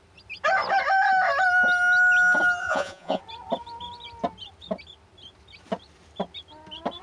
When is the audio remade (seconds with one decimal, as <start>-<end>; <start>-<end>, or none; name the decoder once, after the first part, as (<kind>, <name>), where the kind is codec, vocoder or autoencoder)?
2.6-3.2 (vocoder, Vocos)